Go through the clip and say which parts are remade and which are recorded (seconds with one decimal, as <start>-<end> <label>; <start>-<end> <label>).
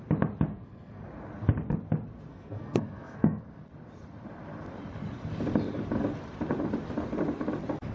0.0-0.5 recorded; 0.5-1.0 remade; 1.0-2.3 recorded; 2.3-3.6 remade; 3.6-7.9 recorded